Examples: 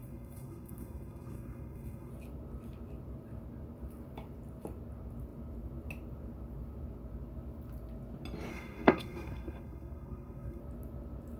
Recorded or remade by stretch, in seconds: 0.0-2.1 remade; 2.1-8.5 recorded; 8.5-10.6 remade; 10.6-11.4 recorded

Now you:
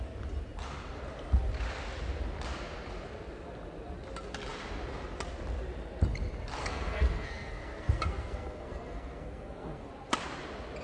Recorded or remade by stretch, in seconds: 0.0-6.6 recorded; 6.6-9.9 remade; 9.9-10.8 recorded